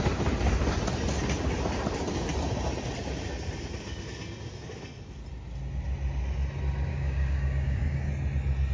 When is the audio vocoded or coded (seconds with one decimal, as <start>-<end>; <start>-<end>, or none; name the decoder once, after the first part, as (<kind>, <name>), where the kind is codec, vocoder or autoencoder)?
6.9-8.1 (codec, DAC)